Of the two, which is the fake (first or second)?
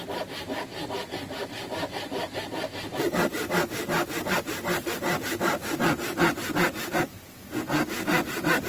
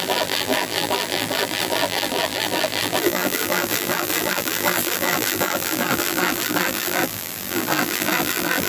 second